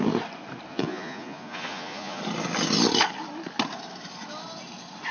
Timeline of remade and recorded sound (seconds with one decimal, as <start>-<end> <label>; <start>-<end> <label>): 0.0-0.7 recorded; 0.7-2.2 remade; 2.2-5.1 recorded